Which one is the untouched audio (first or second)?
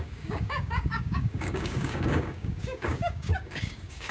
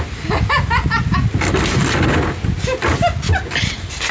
second